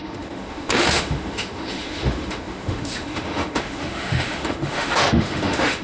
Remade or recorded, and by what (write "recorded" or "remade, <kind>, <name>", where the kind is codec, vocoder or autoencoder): remade, autoencoder, DAC-VAE